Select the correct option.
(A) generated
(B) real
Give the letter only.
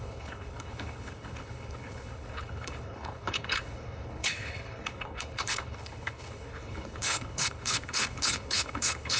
A